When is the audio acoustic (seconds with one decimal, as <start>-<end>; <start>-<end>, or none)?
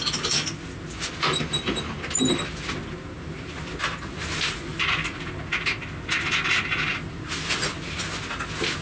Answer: 0.0-4.7; 5.3-6.9; 7.7-8.8